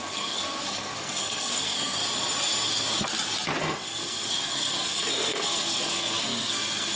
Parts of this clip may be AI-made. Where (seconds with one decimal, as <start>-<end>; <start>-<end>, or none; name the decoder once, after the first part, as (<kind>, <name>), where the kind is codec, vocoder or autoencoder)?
0.0-2.0 (codec, SNAC); 3.6-7.0